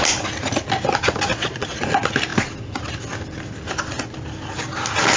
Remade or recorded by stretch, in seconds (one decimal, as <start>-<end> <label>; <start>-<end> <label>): 0.0-1.3 recorded; 1.3-1.9 remade; 1.9-5.2 recorded